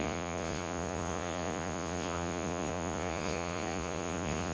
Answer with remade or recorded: remade